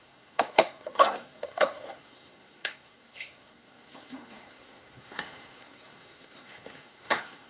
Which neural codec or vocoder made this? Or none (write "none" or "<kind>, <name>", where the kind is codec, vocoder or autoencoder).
codec, SNAC